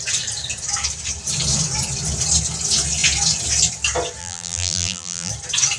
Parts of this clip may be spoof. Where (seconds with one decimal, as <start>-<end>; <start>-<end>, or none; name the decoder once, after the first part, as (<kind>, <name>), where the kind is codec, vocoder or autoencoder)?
4.2-5.3 (vocoder, BigVGAN v2)